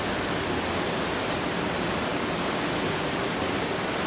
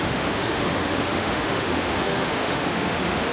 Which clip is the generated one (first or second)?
second